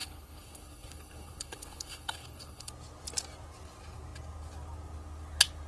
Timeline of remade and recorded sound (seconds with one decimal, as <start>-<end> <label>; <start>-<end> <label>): 0.0-2.7 remade; 2.7-5.7 recorded